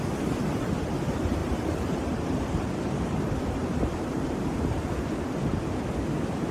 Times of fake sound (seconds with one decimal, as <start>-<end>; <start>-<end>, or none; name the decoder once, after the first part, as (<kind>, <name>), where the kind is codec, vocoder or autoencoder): 1.4-2.7 (vocoder, BigVGAN v2); 3.6-4.8